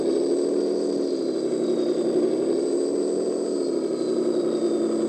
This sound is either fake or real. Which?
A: real